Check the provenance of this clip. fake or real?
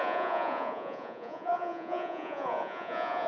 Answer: fake